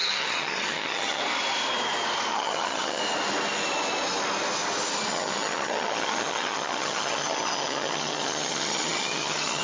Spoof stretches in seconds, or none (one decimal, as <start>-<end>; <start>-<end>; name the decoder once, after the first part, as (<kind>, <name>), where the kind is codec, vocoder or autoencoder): 0.0-1.2 (vocoder, HiFi-GAN); 2.3-3.0; 5.1-9.6

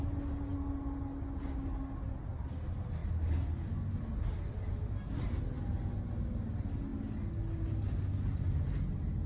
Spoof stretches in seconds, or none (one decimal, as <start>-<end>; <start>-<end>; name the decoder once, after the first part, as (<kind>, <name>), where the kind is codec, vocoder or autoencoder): none